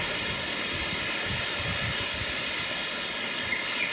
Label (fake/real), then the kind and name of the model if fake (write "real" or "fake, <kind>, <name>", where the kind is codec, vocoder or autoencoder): real